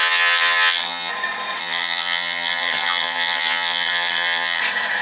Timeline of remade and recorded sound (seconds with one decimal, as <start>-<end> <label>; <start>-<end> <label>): 0.0-1.1 remade; 1.1-1.6 recorded; 1.6-4.6 remade; 4.6-5.0 recorded